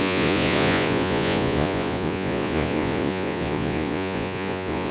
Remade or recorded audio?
remade